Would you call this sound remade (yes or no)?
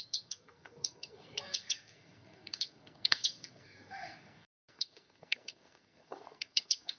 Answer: yes